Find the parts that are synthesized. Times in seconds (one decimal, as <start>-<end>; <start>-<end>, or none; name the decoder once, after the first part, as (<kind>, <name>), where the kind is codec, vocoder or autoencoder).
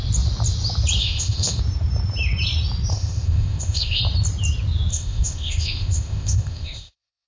1.0-1.6 (codec, ZipCodec); 2.9-4.0; 4.9-7.3